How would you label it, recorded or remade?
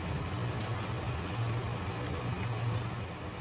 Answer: recorded